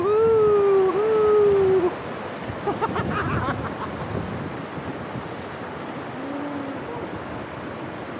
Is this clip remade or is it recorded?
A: recorded